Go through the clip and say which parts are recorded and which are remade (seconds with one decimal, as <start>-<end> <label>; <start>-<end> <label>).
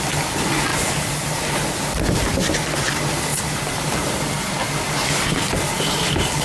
0.0-0.7 recorded; 0.7-1.5 remade; 1.5-3.3 recorded; 3.3-4.3 remade; 4.3-6.4 recorded